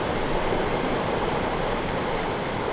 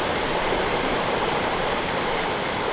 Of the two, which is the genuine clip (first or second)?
first